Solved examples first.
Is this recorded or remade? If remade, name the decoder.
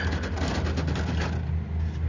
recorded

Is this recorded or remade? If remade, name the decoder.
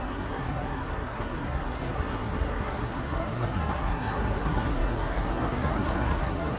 remade, codec, SNAC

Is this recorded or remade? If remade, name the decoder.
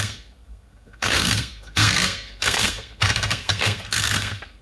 remade, codec, SNAC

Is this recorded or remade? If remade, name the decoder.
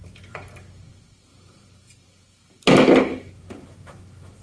recorded